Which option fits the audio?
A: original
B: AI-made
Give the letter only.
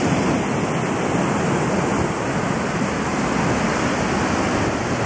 A